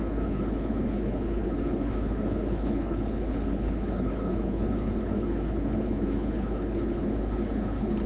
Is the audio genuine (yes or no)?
no